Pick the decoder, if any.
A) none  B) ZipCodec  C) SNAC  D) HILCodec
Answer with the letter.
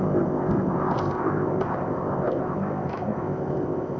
B